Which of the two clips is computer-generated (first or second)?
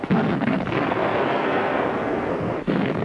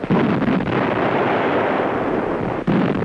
first